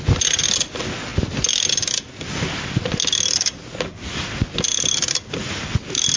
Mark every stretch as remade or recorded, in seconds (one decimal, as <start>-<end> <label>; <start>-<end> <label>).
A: 0.0-6.2 recorded